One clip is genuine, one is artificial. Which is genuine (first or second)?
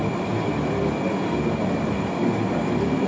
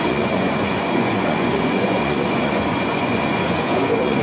first